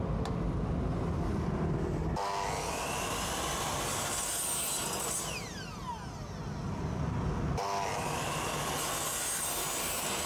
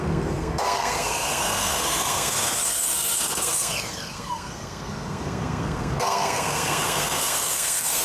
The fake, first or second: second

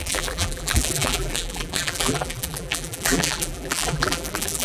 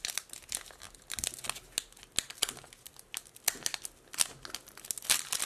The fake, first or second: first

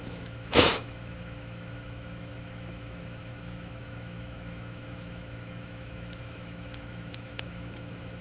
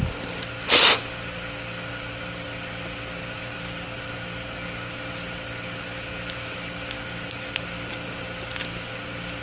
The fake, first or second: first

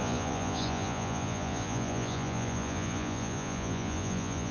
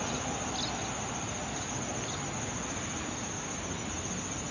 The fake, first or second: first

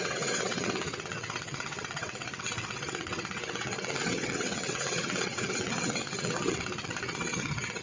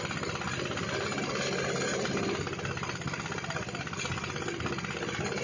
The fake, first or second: first